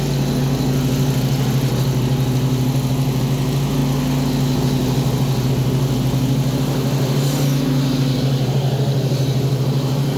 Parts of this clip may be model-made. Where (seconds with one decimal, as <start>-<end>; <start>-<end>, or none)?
none